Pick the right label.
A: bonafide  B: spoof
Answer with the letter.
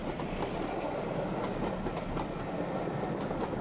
A